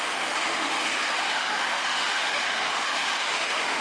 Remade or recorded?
remade